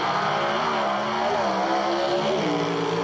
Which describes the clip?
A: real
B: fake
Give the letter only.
A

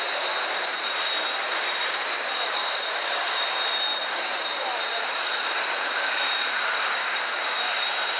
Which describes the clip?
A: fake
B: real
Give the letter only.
A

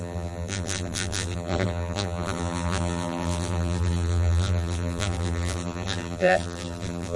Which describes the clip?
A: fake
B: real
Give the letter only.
A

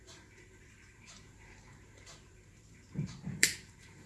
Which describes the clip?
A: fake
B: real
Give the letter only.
A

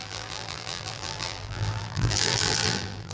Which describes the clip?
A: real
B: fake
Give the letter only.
B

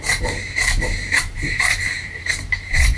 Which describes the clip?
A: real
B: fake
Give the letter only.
B